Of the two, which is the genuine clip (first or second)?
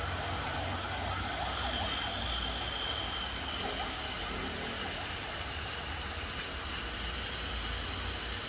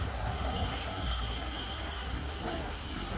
first